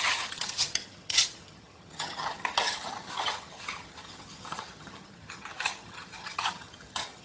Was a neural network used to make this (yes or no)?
yes